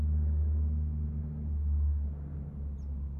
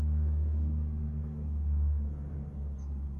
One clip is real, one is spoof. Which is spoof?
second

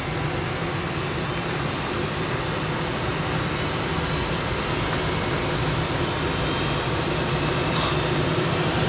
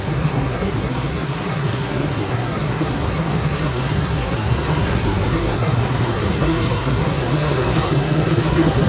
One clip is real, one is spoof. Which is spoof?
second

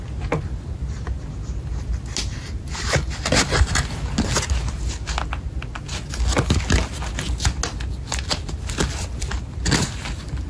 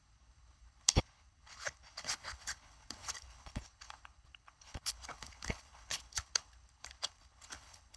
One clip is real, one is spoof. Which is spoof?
second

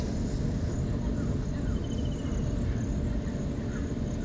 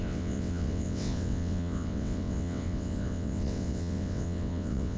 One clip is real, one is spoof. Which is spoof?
second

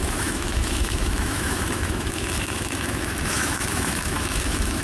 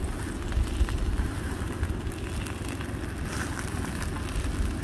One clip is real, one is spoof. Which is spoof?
first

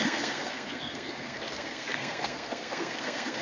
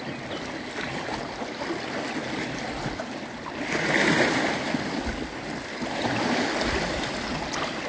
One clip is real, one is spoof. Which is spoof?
first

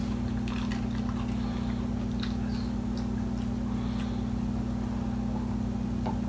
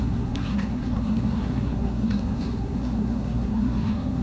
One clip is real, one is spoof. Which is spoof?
second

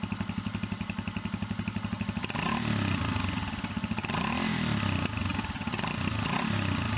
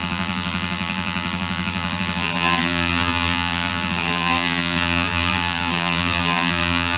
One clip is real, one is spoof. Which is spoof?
second